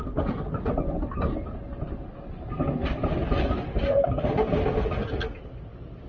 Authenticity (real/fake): real